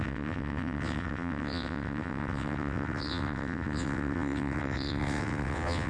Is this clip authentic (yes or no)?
no